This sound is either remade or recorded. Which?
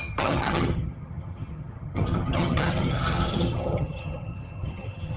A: remade